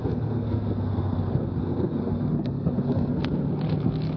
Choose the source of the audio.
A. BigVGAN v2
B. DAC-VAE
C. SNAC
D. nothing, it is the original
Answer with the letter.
C